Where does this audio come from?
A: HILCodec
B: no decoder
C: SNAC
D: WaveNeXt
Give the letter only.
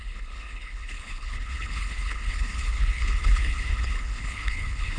A